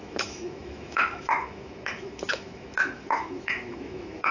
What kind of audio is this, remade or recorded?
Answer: remade